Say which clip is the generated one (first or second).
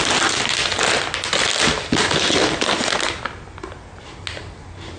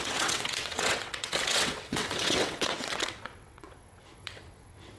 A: second